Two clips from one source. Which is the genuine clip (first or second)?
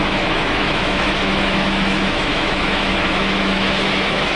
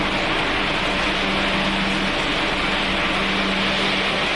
second